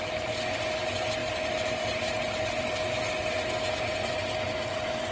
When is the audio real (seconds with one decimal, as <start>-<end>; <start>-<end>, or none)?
0.0-5.1